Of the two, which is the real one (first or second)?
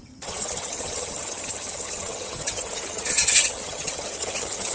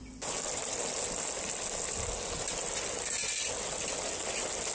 second